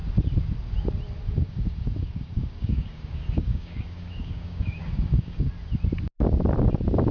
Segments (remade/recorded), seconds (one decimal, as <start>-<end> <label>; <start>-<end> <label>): 0.0-1.2 recorded; 1.2-5.5 remade; 5.5-7.1 recorded